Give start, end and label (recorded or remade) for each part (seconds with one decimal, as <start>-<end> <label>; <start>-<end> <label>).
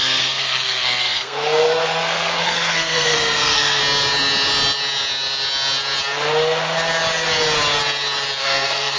0.0-3.8 remade; 3.8-8.4 recorded; 8.4-9.0 remade